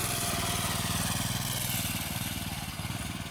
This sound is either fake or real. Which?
real